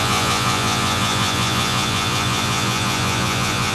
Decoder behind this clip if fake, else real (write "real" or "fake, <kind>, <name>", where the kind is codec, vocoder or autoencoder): fake, vocoder, Vocos